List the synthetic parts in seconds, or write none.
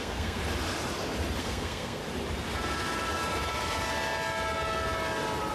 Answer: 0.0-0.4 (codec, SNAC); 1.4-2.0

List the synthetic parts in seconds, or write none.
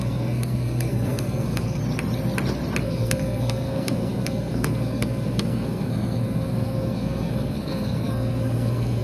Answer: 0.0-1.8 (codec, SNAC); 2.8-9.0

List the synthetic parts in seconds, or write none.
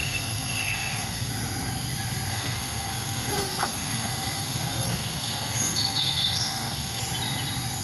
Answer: 0.0-1.3 (codec, SNAC); 2.3-7.0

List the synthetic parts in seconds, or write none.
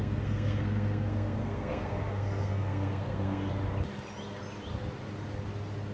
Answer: 0.0-3.5 (codec, SNAC)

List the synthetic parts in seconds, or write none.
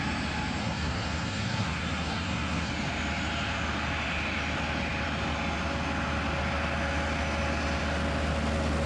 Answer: 0.6-2.7 (codec, SNAC)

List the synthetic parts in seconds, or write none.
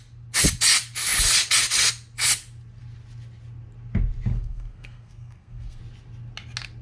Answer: 4.3-5.8 (codec, SNAC)